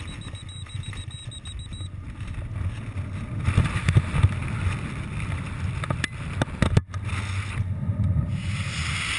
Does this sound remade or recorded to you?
recorded